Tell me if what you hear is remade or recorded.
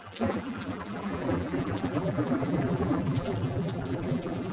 remade